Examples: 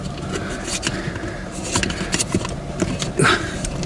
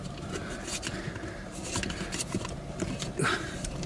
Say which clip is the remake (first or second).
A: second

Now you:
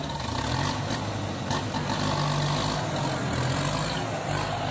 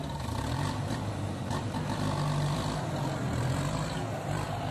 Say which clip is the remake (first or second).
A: second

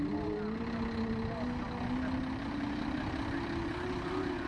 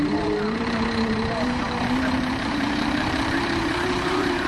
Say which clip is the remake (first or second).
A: second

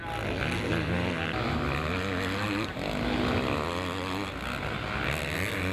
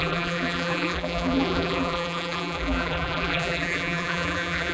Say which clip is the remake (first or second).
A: second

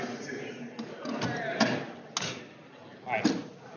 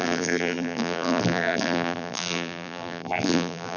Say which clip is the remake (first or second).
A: second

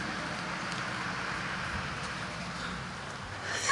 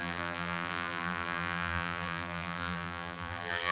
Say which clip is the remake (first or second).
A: second